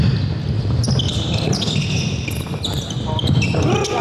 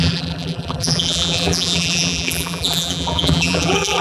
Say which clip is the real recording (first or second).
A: first